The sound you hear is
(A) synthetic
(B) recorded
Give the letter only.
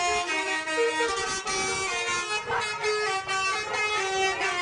B